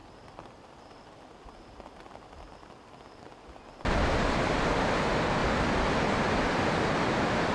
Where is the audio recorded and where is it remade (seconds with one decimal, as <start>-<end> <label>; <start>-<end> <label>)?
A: 0.0-4.1 recorded; 4.1-5.4 remade; 5.4-7.5 recorded